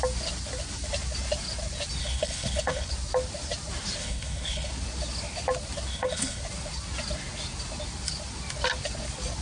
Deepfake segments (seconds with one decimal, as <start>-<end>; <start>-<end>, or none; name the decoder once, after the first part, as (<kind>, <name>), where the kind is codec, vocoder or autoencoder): 2.0-2.9 (codec, HILCodec); 4.0-4.7; 5.9-6.4